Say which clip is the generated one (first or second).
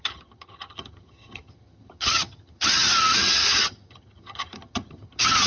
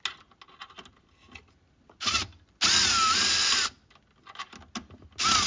first